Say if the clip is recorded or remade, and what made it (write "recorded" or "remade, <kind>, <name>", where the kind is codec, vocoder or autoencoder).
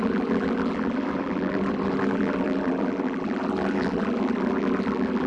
remade, vocoder, BigVGAN v2